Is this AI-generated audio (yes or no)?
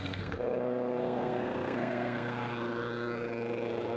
yes